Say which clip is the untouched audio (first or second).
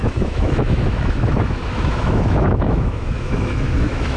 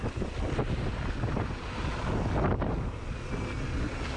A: second